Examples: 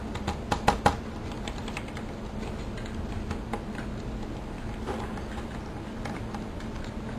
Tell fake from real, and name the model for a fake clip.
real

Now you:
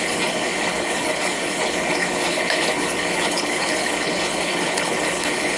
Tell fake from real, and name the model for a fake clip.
fake, codec, HILCodec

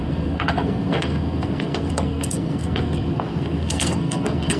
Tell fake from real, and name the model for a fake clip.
fake, codec, SNAC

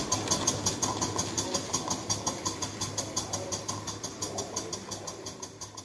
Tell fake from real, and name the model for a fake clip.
real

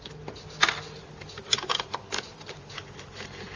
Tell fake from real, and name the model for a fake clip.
real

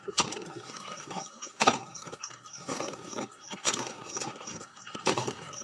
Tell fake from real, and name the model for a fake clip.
fake, codec, SNAC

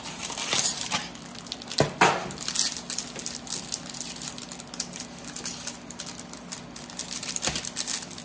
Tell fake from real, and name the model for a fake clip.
real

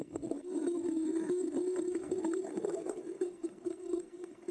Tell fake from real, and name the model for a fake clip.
fake, codec, SNAC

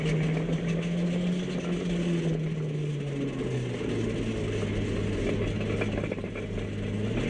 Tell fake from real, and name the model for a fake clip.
real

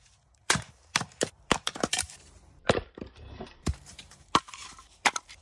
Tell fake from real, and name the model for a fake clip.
fake, vocoder, BigVGAN v2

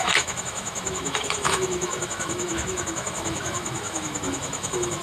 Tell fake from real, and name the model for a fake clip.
fake, autoencoder, DAC-VAE